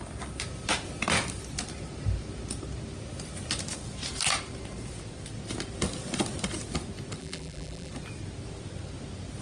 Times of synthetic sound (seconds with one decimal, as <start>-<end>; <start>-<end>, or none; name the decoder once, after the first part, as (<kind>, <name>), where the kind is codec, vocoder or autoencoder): 7.2-7.9 (vocoder, BigVGAN v2)